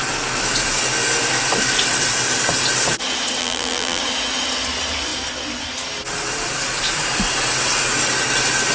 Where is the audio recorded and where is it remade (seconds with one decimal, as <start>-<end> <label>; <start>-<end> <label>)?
0.0-3.4 recorded; 3.4-4.0 remade; 4.0-8.7 recorded

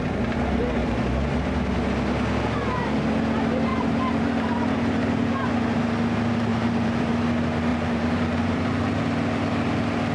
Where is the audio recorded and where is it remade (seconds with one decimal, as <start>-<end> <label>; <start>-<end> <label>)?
0.0-0.8 recorded; 0.8-1.5 remade; 1.5-3.7 recorded; 3.7-5.5 remade; 5.5-6.5 recorded; 6.5-7.1 remade; 7.1-7.7 recorded; 7.7-9.0 remade; 9.0-10.1 recorded

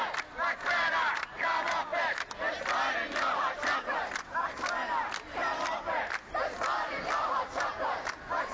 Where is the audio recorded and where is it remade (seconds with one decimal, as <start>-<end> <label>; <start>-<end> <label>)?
0.0-8.5 recorded

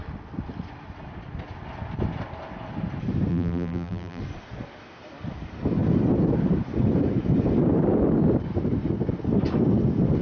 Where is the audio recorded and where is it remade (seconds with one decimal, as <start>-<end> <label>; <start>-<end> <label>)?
0.0-3.3 recorded; 3.3-4.2 remade; 4.2-10.2 recorded

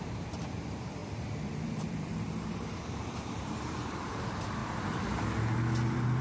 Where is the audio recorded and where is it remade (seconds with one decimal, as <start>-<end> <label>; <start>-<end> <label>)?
0.0-4.6 remade; 4.6-6.2 recorded